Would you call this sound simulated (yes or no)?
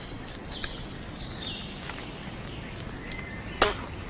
no